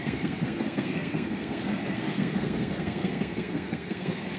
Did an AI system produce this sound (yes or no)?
yes